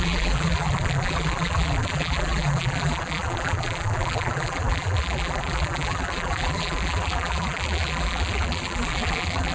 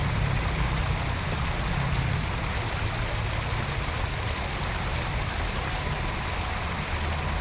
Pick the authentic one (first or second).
second